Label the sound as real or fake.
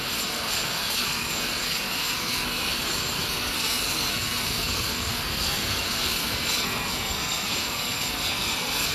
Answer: fake